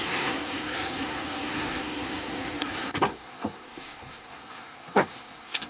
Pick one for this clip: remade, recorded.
remade